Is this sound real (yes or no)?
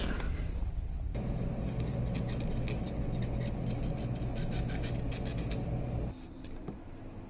yes